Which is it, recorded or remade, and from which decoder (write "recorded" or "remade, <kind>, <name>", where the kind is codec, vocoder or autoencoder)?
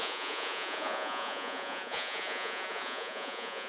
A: remade, vocoder, Vocos